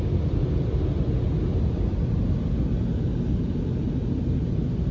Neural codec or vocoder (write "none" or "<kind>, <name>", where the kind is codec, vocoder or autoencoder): none